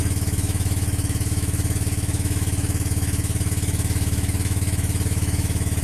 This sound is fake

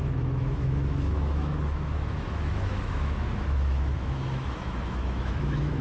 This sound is fake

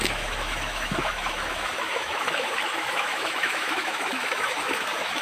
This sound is fake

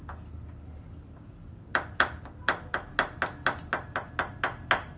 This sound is real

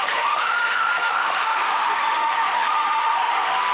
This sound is fake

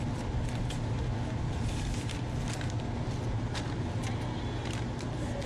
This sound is real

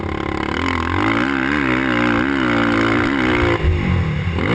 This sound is real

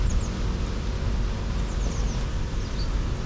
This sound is real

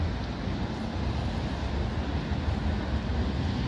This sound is real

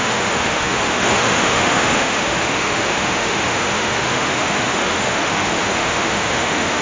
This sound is fake